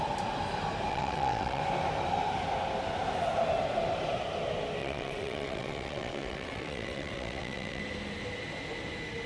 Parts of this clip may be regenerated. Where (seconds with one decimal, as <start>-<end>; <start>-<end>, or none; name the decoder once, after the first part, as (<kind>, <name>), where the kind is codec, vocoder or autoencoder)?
0.9-1.6 (vocoder, WaveNeXt); 4.8-7.8